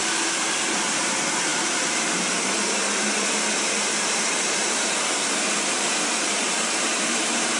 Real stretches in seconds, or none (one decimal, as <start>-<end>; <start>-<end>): 0.0-0.9